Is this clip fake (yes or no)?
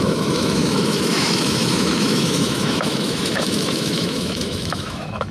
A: yes